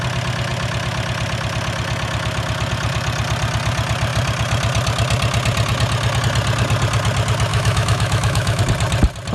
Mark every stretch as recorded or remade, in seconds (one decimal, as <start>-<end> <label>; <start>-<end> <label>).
0.0-7.5 recorded; 7.5-8.6 remade; 8.6-9.3 recorded